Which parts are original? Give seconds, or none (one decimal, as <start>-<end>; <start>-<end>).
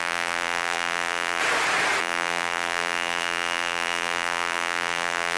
1.4-2.0